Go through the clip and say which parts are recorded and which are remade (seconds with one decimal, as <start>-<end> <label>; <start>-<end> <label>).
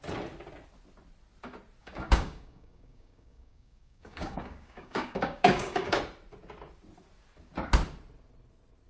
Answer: 0.0-1.8 recorded; 1.8-6.0 remade; 6.0-8.9 recorded